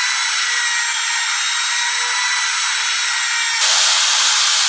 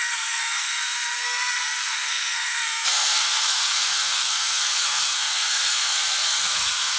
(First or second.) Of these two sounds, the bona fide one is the first